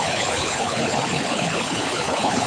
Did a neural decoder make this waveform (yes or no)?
yes